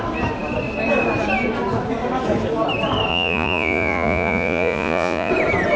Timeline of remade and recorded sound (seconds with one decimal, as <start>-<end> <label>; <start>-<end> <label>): 0.0-3.1 recorded; 3.1-5.3 remade; 5.3-5.8 recorded